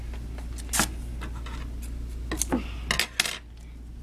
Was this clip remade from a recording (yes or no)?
no